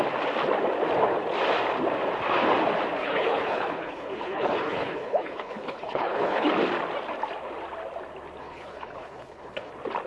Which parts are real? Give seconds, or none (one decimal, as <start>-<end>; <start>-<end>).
0.0-3.0; 6.5-8.4; 9.7-10.1